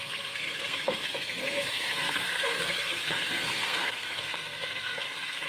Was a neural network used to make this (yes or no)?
yes